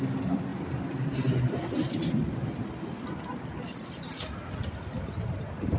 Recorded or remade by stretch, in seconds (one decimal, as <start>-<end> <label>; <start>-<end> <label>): 0.0-5.8 recorded